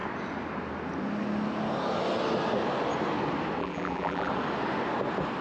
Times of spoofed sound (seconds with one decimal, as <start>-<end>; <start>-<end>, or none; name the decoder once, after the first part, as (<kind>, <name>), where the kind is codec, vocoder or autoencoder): 3.6-4.3 (vocoder, BigVGAN v2)

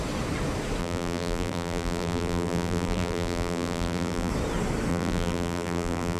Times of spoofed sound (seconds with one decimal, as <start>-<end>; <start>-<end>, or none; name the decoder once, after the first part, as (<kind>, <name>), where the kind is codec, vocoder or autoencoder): 0.8-4.3 (vocoder, BigVGAN v2); 4.9-6.2

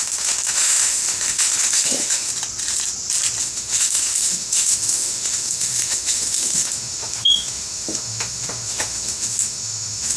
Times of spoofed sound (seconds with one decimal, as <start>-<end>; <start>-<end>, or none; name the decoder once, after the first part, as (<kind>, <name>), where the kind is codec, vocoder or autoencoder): 0.0-2.3 (autoencoder, DAC-VAE); 3.4-10.2

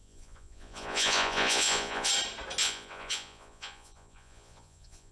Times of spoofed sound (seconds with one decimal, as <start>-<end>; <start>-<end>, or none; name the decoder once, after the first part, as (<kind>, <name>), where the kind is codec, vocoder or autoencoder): 0.0-2.1 (vocoder, Vocos); 2.6-5.1